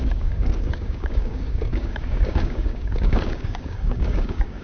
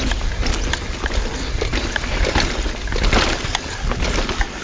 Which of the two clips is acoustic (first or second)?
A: second